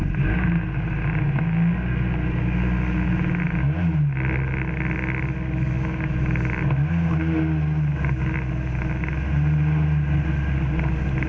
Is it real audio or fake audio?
real